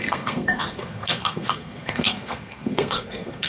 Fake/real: fake